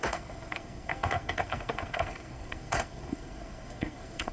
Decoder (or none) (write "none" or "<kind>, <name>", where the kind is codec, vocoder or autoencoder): codec, SNAC